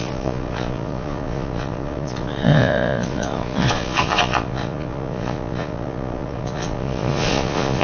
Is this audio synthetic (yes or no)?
yes